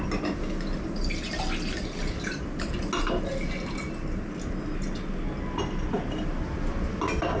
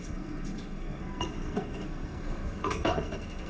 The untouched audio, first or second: first